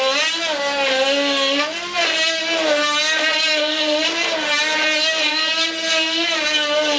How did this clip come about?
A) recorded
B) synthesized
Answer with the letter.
A